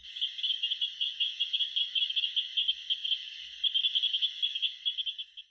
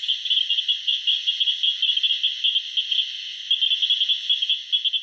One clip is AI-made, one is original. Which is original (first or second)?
second